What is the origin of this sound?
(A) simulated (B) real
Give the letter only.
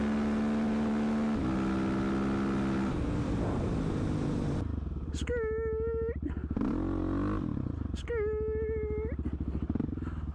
B